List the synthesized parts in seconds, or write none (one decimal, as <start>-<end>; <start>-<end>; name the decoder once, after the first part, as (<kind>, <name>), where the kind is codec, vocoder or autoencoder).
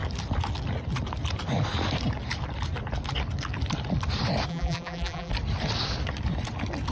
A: 4.5-5.3 (vocoder, BigVGAN v2)